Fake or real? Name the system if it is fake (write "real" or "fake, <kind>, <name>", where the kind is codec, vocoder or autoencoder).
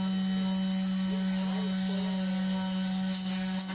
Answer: real